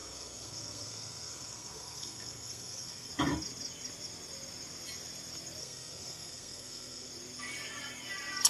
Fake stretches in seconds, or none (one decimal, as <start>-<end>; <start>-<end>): 0.0-3.1; 5.6-7.1